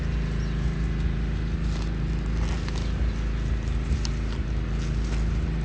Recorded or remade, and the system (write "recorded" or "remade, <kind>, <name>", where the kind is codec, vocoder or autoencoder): recorded